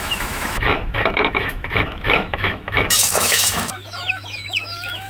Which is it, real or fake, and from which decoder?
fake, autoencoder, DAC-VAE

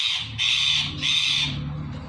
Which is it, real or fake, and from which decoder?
fake, vocoder, BigVGAN v2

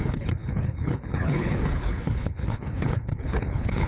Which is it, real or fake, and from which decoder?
fake, codec, HILCodec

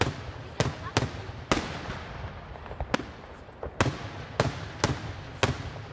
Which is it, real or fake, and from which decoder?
real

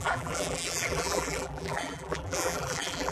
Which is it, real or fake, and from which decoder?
fake, vocoder, BigVGAN v2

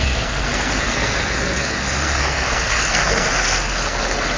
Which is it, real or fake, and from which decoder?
fake, codec, SNAC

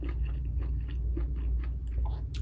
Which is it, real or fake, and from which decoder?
real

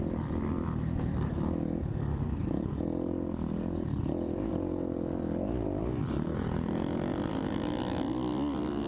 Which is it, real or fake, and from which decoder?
real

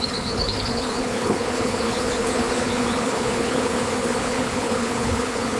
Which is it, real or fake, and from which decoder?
fake, codec, HILCodec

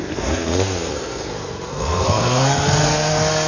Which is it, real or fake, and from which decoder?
fake, codec, SNAC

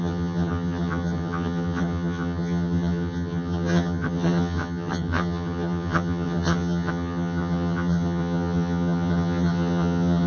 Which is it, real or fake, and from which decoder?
fake, vocoder, HiFi-GAN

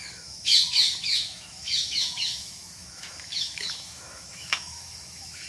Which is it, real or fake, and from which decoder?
fake, autoencoder, DAC-VAE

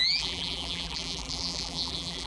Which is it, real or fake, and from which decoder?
fake, vocoder, BigVGAN v2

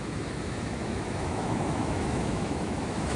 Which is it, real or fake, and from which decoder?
fake, autoencoder, DAC-VAE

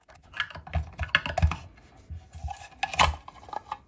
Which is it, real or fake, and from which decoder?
real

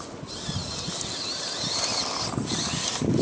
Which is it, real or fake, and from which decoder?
real